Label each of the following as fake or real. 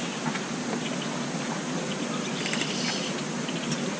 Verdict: real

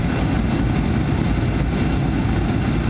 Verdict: real